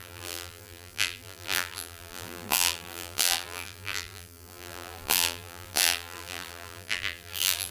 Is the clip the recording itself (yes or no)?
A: no